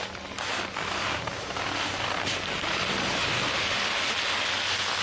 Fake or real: real